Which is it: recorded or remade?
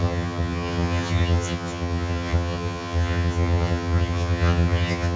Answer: remade